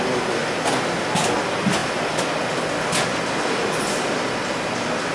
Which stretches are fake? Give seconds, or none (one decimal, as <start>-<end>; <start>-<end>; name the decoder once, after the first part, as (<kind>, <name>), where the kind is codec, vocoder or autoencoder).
none